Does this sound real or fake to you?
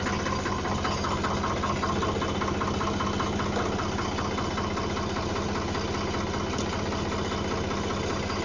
real